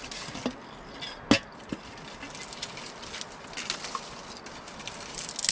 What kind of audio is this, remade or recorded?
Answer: recorded